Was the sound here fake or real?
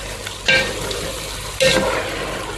real